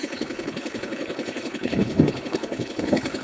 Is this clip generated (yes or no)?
yes